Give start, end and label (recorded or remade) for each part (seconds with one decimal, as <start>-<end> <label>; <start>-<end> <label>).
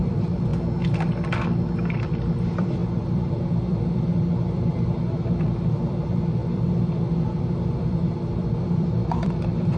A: 0.0-0.5 remade; 0.5-2.0 recorded; 2.0-9.8 remade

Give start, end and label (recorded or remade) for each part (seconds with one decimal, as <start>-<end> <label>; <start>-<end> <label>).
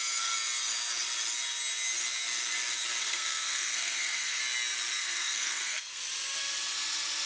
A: 0.0-3.0 recorded; 3.0-4.4 remade; 4.4-5.0 recorded; 5.0-6.0 remade; 6.0-7.3 recorded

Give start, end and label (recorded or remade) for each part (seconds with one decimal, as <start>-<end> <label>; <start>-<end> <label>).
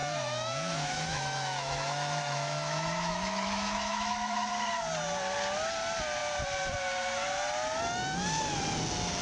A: 0.0-4.5 remade; 4.5-9.2 recorded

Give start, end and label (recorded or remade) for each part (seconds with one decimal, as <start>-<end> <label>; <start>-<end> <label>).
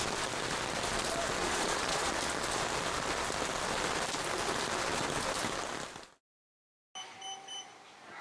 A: 0.0-1.4 recorded; 1.4-2.2 remade; 2.2-8.2 recorded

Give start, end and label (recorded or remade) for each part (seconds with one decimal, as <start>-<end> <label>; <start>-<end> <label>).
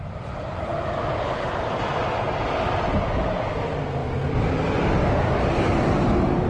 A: 0.0-1.9 remade; 1.9-3.5 recorded; 3.5-4.0 remade; 4.0-5.4 recorded; 5.4-6.5 remade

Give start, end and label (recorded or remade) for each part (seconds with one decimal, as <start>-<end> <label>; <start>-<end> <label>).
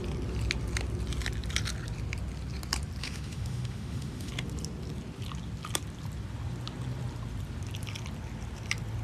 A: 0.0-3.0 recorded; 3.0-4.3 remade; 4.3-9.0 recorded